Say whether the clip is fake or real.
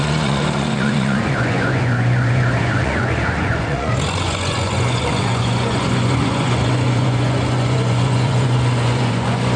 fake